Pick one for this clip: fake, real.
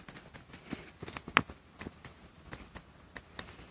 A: real